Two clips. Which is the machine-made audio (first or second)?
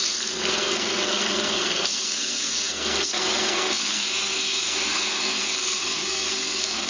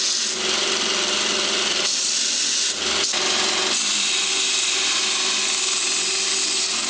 first